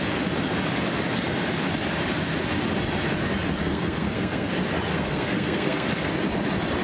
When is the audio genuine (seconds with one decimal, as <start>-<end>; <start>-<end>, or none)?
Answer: 0.0-3.6; 4.5-4.9; 6.1-6.8